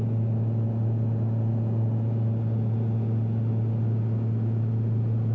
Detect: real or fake real